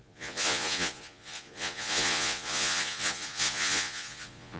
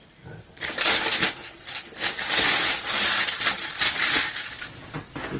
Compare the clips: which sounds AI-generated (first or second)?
first